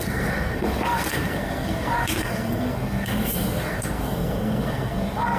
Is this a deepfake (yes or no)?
yes